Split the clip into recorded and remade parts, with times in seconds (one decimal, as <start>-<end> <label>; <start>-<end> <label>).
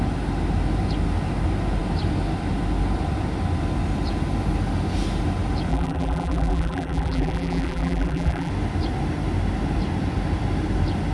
0.0-5.7 recorded; 5.7-8.5 remade; 8.5-11.1 recorded